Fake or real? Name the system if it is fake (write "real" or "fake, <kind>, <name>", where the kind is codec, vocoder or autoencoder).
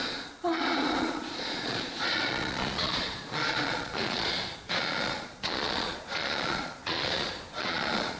fake, vocoder, Vocos